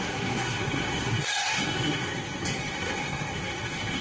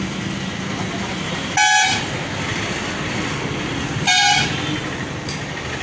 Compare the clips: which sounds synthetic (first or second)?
first